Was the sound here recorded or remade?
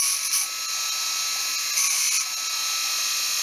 recorded